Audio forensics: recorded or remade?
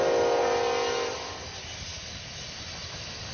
recorded